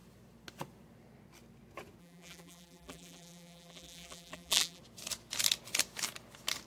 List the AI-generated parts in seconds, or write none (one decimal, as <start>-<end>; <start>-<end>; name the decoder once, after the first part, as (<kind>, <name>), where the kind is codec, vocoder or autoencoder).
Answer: 2.0-4.8 (vocoder, BigVGAN v2)